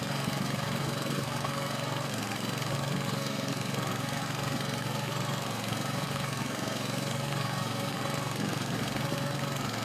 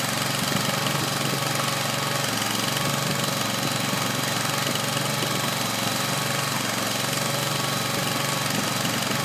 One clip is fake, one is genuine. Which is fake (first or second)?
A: first